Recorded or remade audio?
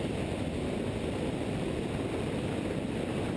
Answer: recorded